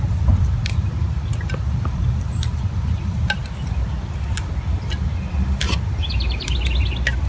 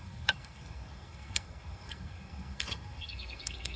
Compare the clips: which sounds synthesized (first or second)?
second